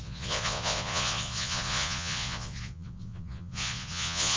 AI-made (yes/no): yes